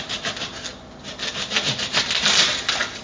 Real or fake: real